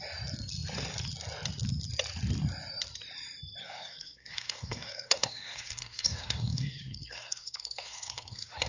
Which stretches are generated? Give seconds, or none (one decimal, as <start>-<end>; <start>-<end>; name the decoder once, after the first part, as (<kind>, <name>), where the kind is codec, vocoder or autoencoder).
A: 3.6-8.7 (codec, SNAC)